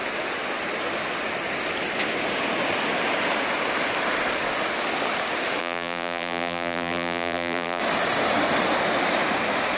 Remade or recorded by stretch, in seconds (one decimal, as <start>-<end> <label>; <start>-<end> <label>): 0.0-5.6 recorded; 5.6-7.8 remade; 7.8-9.8 recorded